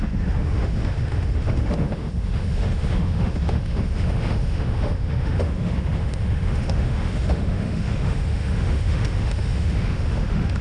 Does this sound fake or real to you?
fake